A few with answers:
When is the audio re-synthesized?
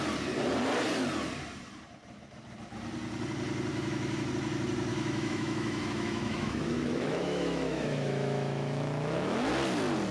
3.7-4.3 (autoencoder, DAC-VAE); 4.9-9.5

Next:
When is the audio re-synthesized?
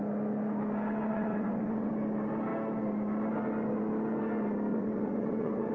1.1-1.9 (vocoder, WaveNeXt); 4.7-5.7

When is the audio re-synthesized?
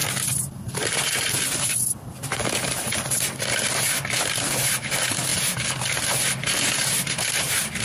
none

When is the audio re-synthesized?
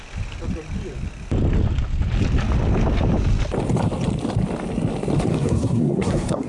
5.3-6.5 (codec, SNAC)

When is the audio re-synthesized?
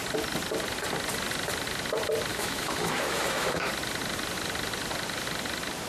2.3-3.7 (autoencoder, DAC-VAE)